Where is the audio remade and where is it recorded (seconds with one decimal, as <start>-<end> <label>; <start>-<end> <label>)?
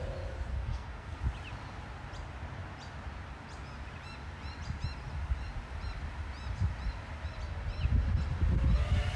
0.0-0.5 recorded; 0.5-1.2 remade; 1.2-9.2 recorded